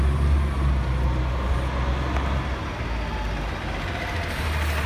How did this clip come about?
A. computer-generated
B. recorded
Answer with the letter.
B